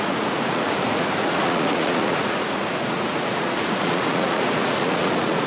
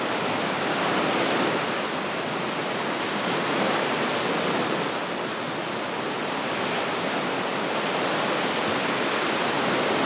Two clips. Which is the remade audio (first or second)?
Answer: first